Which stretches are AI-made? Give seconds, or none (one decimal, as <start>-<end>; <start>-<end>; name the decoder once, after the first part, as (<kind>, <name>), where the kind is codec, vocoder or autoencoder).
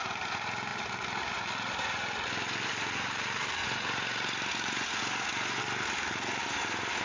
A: 3.6-5.6 (vocoder, Vocos)